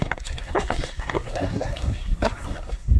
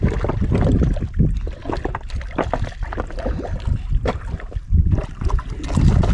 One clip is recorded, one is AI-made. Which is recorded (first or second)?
second